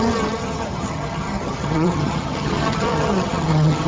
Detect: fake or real fake